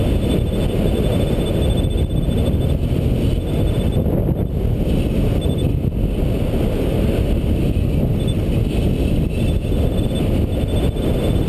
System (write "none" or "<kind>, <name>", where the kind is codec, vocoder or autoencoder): none